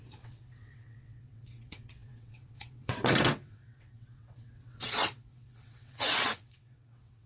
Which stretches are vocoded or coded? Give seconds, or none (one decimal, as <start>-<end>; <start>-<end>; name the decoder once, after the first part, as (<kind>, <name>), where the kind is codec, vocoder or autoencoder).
0.0-7.3 (vocoder, WaveNeXt)